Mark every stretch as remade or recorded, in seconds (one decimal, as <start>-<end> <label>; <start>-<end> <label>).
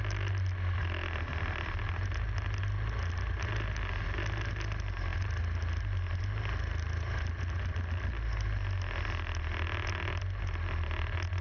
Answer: 0.0-11.4 recorded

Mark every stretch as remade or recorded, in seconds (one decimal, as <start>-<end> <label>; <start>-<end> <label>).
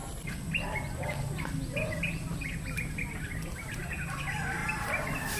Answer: 0.0-4.6 recorded; 4.6-5.4 remade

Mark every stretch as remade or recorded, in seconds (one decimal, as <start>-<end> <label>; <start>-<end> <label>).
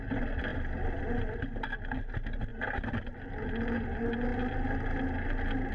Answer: 0.0-5.7 recorded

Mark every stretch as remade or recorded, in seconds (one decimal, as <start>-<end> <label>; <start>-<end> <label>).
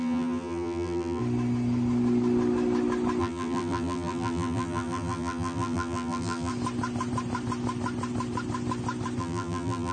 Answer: 0.0-1.2 remade; 1.2-3.2 recorded; 3.2-6.5 remade; 6.5-9.2 recorded; 9.2-9.9 remade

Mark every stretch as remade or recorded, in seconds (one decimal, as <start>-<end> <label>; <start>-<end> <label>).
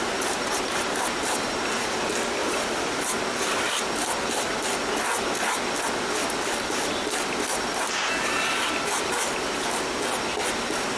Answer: 0.0-2.4 recorded; 2.4-3.0 remade; 3.0-7.5 recorded; 7.5-8.6 remade; 8.6-11.0 recorded